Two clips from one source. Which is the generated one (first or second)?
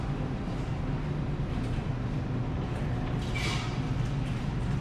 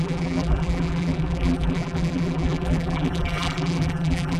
second